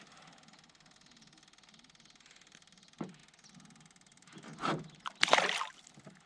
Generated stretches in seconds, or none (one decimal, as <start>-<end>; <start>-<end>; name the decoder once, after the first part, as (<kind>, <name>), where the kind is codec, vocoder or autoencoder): 0.0-3.2 (vocoder, BigVGAN v2); 5.7-6.3